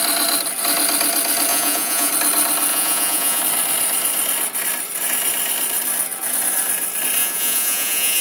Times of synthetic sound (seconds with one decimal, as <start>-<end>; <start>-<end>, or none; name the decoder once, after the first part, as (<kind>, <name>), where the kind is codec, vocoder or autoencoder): 1.5-2.1 (vocoder, Vocos); 2.7-3.4; 7.2-8.2